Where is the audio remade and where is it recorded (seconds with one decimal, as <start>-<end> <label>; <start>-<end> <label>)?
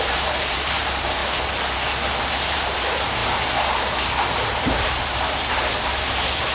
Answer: 0.0-1.2 remade; 1.2-2.2 recorded; 2.2-6.5 remade